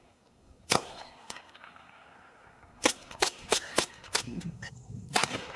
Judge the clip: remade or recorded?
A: remade